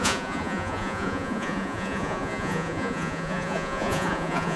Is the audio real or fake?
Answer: fake